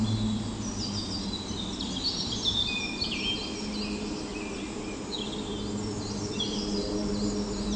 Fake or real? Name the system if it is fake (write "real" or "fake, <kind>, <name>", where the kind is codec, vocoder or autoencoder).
real